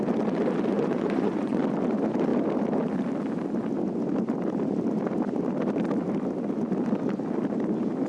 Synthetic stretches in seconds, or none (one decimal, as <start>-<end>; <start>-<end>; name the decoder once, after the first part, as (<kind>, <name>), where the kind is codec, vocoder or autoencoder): 0.7-1.6 (vocoder, Vocos)

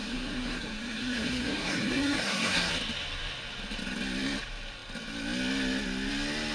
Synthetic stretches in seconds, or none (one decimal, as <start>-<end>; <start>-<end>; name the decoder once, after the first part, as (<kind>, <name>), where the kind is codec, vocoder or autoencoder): 0.0-2.7 (codec, SNAC)

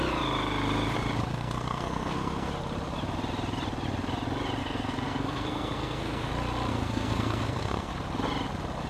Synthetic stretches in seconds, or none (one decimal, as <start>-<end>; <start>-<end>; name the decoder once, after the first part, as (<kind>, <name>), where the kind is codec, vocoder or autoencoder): 1.3-2.5 (codec, SNAC); 4.6-6.3; 6.7-7.9

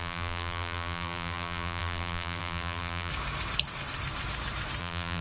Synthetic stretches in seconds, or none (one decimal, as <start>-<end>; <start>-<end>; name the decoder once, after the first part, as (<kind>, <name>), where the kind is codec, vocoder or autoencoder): 0.0-3.1 (vocoder, BigVGAN v2); 4.8-5.2

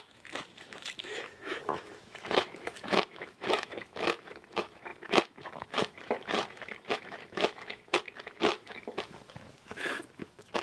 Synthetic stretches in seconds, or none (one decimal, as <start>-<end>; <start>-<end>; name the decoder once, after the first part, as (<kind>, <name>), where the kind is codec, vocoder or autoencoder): 0.0-10.6 (autoencoder, DAC-VAE)

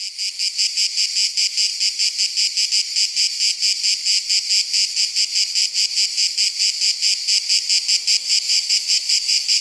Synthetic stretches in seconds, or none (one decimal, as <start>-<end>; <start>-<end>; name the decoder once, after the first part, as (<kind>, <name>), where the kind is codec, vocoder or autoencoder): 8.2-9.6 (autoencoder, DAC-VAE)

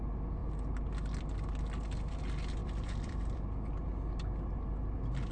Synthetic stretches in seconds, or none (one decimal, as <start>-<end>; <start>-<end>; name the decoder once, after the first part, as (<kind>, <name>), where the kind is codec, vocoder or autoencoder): 2.6-3.4 (vocoder, BigVGAN v2)

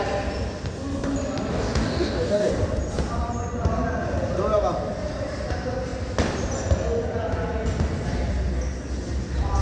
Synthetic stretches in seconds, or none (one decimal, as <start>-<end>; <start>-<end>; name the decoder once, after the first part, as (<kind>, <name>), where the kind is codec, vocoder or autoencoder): 1.5-2.5 (codec, DAC)